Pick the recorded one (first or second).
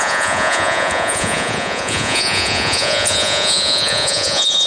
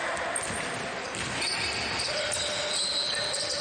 second